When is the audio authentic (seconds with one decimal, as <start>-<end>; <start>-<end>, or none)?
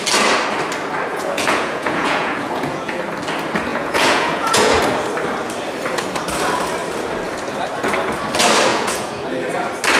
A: 0.0-1.1; 3.0-3.7; 4.8-8.7; 9.3-10.0